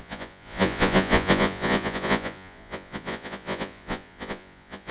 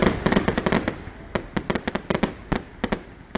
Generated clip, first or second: first